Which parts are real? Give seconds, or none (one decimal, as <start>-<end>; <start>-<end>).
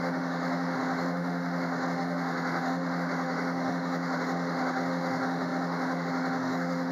none